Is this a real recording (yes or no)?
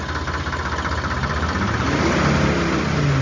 yes